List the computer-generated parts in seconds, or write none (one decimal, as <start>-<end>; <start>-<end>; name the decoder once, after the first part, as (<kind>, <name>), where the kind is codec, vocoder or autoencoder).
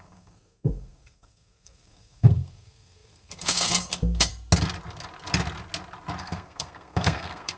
0.0-4.3 (codec, SNAC); 6.2-7.6